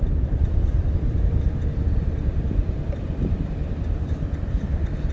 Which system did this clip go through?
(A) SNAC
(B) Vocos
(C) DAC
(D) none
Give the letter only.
D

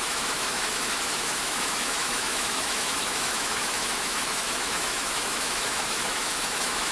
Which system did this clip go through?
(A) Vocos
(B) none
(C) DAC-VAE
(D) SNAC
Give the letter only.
C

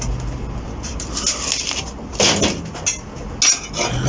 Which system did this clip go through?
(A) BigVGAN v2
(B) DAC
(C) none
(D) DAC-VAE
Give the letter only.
C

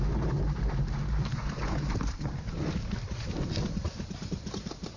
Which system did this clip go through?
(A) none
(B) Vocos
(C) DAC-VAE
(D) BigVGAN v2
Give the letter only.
D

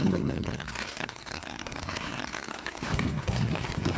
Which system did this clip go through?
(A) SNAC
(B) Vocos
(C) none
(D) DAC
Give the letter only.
A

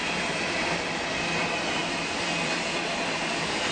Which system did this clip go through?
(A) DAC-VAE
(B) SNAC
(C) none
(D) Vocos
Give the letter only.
C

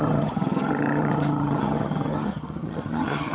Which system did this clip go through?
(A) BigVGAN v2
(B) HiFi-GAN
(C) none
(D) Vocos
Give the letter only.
B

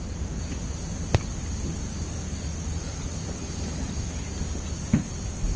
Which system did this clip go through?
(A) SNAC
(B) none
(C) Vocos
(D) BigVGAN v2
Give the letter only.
B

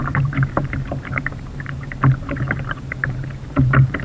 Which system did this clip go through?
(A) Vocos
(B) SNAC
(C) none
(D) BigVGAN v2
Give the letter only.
D